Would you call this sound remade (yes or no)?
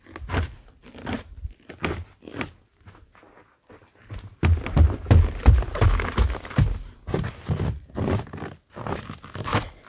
no